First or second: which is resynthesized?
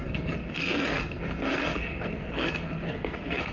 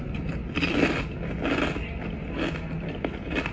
first